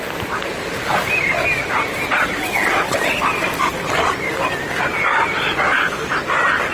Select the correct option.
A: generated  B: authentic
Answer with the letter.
B